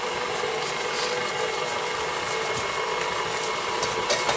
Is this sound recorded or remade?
recorded